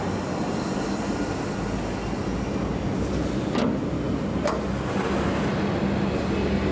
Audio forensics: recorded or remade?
recorded